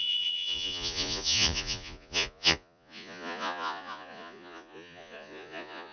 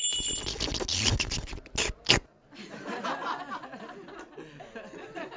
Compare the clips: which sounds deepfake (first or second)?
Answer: first